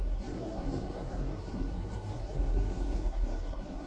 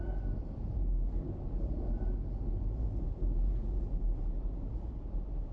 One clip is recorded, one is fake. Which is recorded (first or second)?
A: second